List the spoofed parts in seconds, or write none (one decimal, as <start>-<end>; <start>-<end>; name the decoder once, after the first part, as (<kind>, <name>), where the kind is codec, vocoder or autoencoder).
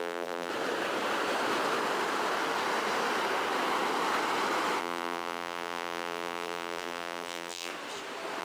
0.0-0.5 (vocoder, BigVGAN v2); 4.8-7.7